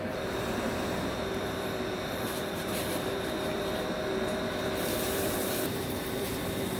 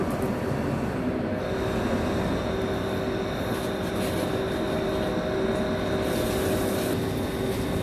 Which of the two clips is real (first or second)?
second